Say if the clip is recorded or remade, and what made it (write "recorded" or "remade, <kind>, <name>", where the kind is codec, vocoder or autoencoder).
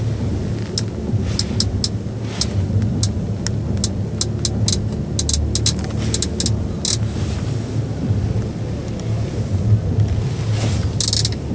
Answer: recorded